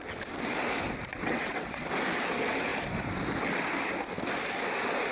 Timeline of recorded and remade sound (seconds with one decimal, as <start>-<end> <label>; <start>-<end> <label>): 0.0-1.1 recorded; 1.1-1.8 remade; 1.8-5.1 recorded